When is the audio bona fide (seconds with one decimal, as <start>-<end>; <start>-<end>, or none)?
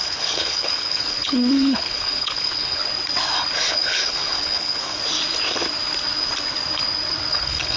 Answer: 2.8-3.7; 5.0-7.3